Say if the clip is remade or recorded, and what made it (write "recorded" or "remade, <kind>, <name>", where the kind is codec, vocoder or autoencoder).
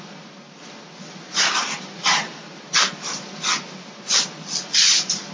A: recorded